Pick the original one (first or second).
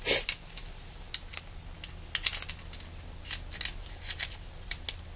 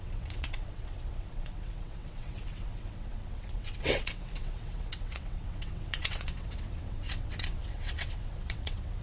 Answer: first